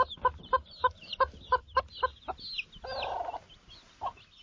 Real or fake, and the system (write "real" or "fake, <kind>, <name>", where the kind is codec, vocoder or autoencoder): real